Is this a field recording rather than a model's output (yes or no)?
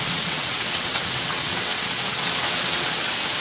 no